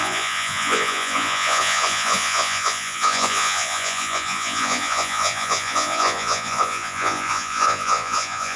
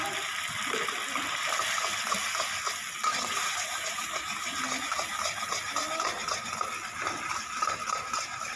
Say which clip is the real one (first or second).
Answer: second